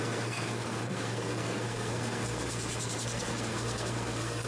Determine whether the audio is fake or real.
fake